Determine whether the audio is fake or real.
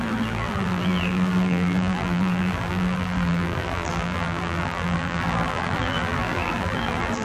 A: fake